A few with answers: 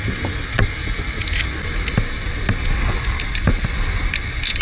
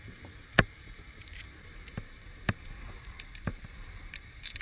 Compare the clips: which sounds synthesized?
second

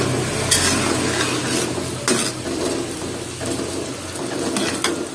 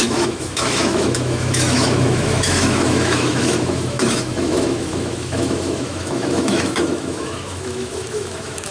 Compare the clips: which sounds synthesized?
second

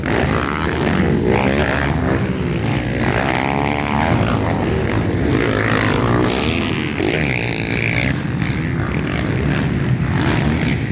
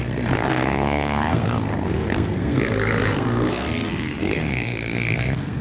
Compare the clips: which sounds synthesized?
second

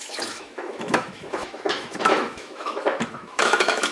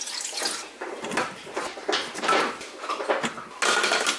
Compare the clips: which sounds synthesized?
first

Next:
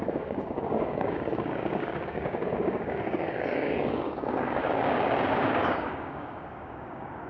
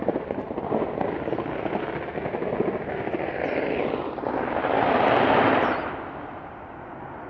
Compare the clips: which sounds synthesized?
first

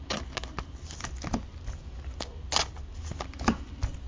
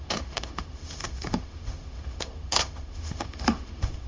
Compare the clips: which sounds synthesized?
second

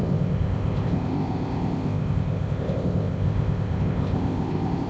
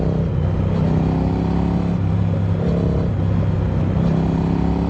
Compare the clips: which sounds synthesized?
first